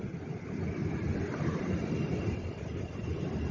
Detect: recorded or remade recorded